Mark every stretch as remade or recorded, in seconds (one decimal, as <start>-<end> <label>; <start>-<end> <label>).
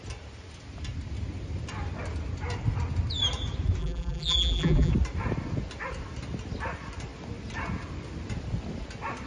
0.0-3.8 recorded; 3.8-4.9 remade; 4.9-9.3 recorded